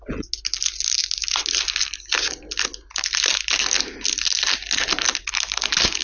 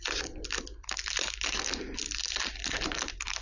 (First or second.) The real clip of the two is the first